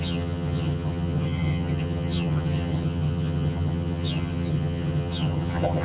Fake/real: fake